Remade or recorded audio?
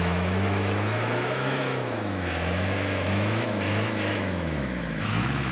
remade